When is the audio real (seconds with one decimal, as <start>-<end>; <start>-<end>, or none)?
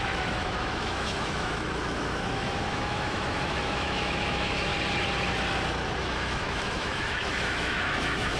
4.7-6.0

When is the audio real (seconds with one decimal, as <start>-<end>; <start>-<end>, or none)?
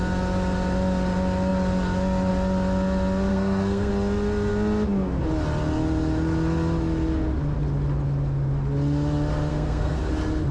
0.0-3.3; 3.9-9.5; 10.1-10.5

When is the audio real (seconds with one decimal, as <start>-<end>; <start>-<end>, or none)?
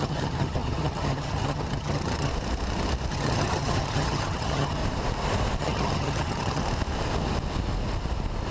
2.3-3.1; 4.8-5.6; 6.6-8.5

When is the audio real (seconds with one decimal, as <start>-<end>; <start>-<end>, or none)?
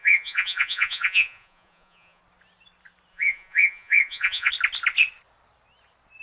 2.2-3.1; 4.5-6.2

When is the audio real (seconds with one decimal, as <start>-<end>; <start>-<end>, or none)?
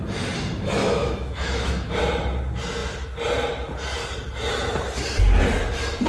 0.0-0.8; 2.0-6.1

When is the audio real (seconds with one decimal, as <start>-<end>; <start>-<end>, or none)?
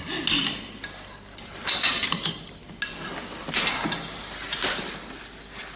0.0-5.8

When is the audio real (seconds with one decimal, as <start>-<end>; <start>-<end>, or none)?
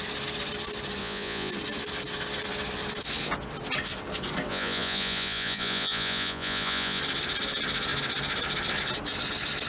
0.0-1.0; 1.5-4.5; 7.0-9.7